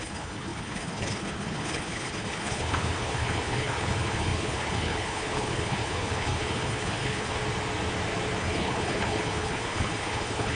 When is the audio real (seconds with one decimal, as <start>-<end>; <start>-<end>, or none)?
7.4-8.4

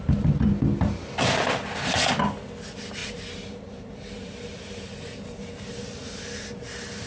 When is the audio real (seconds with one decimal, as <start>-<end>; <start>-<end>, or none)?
0.0-3.0; 6.2-7.1

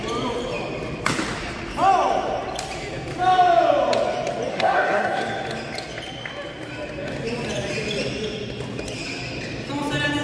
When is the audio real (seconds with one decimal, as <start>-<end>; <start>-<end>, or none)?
0.0-4.5; 5.2-10.2

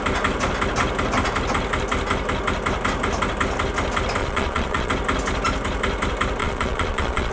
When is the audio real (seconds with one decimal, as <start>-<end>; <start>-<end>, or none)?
0.0-4.2; 4.9-6.4